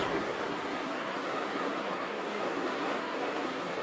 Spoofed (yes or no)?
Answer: yes